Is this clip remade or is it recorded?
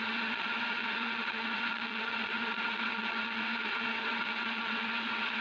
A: remade